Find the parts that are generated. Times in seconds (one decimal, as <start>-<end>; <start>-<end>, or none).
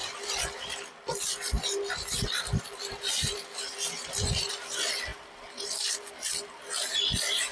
0.0-4.5; 5.1-6.1